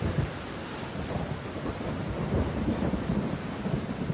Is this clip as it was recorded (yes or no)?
yes